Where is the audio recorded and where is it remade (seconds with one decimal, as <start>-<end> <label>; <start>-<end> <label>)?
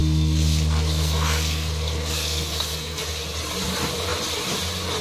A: 0.0-3.0 remade; 3.0-5.0 recorded